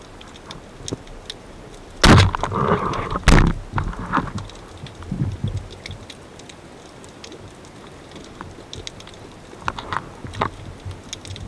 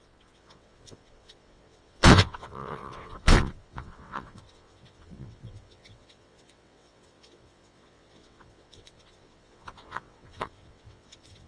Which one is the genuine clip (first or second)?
first